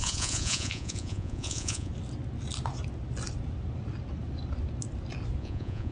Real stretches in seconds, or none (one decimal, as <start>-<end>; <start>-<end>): 1.9-5.4